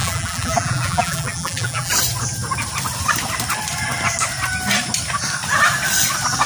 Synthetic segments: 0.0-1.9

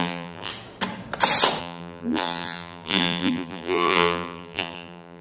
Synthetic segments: 0.0-0.5; 1.6-5.2